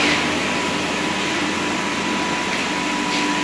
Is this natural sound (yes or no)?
yes